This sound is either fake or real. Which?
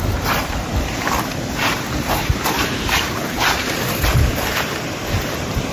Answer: fake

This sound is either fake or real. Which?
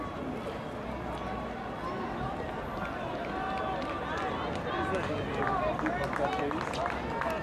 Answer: real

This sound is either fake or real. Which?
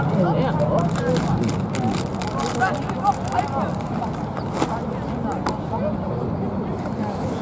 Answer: real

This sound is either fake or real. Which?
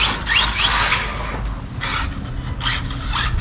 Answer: real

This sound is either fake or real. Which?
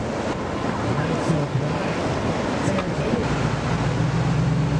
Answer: real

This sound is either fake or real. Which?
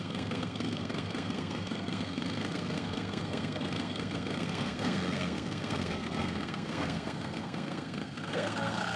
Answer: fake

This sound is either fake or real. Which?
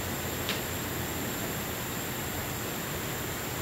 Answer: fake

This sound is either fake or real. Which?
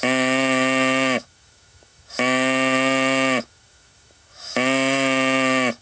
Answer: fake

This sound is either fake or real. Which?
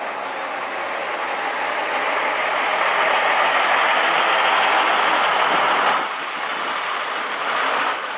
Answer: real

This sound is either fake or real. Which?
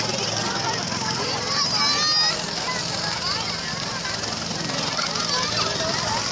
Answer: real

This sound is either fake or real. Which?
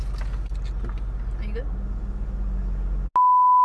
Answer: real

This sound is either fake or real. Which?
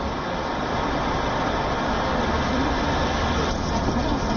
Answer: real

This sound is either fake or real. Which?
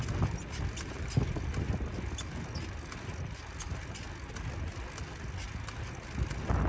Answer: real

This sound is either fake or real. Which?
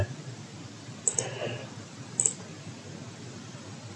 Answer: real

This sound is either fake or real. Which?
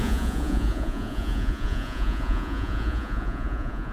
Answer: fake